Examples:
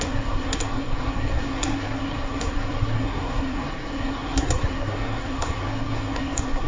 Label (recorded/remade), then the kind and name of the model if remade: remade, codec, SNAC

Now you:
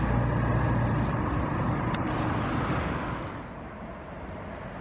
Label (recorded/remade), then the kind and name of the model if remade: recorded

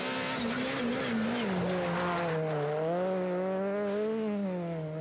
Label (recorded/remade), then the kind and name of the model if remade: recorded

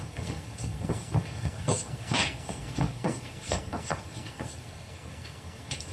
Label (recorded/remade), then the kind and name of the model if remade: remade, codec, SNAC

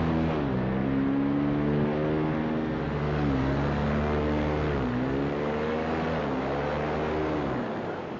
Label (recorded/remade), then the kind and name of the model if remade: recorded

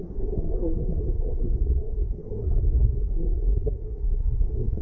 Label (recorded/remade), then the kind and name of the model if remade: remade, codec, SNAC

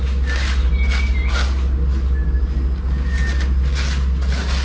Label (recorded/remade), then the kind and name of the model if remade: recorded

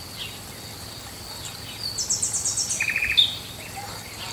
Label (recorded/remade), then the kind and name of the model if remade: recorded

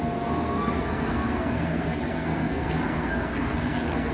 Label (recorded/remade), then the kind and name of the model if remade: remade, codec, SNAC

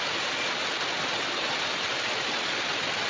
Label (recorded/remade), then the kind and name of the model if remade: recorded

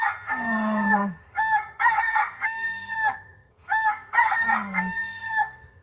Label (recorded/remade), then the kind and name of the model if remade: remade, codec, SNAC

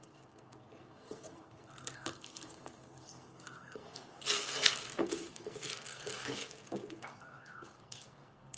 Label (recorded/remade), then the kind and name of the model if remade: remade, codec, SNAC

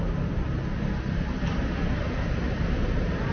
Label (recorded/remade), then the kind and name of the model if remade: recorded